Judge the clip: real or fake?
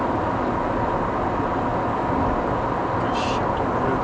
real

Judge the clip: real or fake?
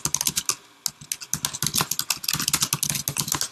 real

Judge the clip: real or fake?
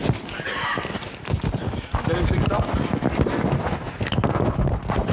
real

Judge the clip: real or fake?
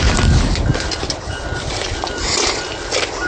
real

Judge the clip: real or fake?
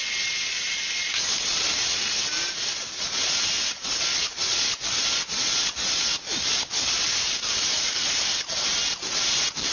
real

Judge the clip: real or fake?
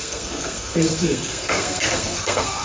fake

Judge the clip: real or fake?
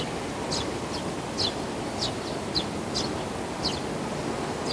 real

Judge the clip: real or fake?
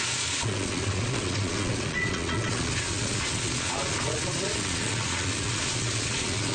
fake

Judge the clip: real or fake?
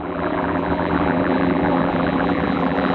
fake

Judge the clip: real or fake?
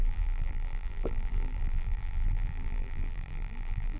fake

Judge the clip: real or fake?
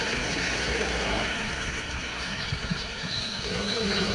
fake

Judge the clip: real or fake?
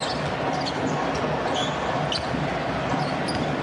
real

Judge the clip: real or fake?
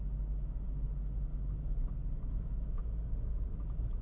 real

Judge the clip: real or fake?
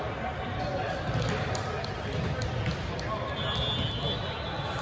real